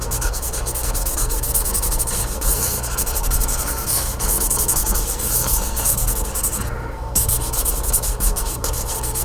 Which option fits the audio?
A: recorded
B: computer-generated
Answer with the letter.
B